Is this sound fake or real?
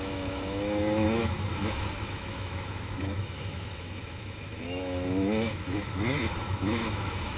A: fake